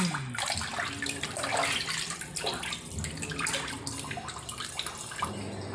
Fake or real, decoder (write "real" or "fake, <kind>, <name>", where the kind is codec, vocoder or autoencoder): real